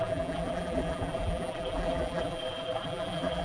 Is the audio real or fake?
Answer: fake